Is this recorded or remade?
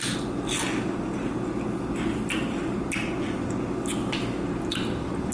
recorded